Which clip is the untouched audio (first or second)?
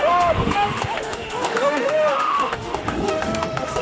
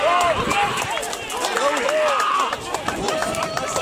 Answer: second